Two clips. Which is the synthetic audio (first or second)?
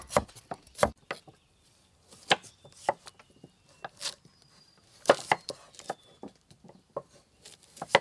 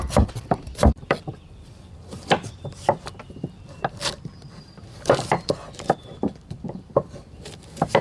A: second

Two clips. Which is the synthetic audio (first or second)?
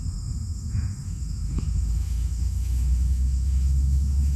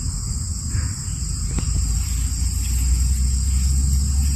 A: first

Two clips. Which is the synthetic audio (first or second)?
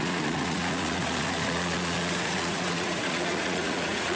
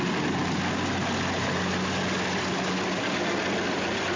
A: first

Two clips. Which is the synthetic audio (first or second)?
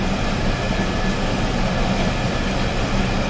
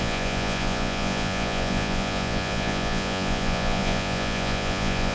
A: second